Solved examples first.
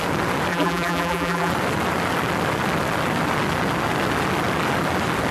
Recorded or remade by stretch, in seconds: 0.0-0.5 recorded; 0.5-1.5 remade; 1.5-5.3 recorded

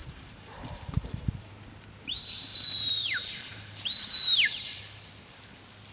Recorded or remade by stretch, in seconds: 0.0-1.5 remade; 1.5-2.5 recorded; 2.5-4.8 remade; 4.8-5.9 recorded